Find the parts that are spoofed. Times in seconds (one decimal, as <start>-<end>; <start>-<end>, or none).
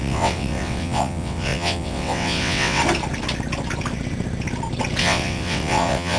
0.0-2.8; 5.0-6.2